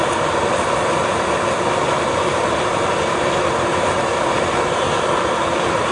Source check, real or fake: fake